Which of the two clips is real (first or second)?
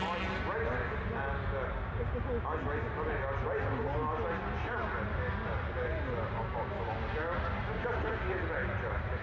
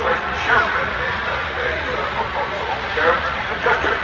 first